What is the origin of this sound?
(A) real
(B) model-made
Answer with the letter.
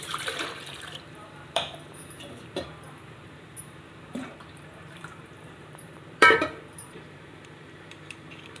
B